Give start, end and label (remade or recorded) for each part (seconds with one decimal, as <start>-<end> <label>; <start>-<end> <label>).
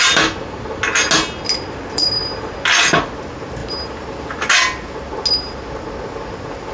0.0-6.7 recorded